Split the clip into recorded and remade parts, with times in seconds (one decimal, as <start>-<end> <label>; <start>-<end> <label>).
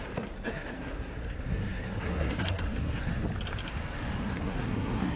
0.0-3.1 remade; 3.1-4.2 recorded; 4.2-5.2 remade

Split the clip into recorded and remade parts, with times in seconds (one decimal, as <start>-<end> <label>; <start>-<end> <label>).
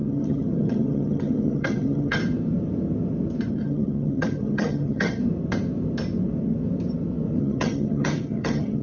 0.0-2.2 remade; 2.2-3.5 recorded; 3.5-5.2 remade; 5.2-7.4 recorded; 7.4-8.8 remade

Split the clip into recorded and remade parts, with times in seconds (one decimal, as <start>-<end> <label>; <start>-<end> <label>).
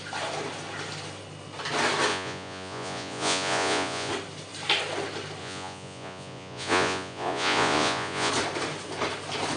0.0-2.1 recorded; 2.1-4.1 remade; 4.1-5.4 recorded; 5.4-8.3 remade; 8.3-9.6 recorded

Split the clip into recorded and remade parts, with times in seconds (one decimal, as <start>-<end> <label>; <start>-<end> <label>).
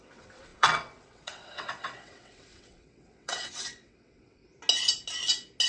0.0-4.4 remade; 4.4-5.7 recorded